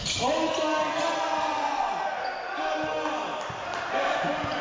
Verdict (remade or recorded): recorded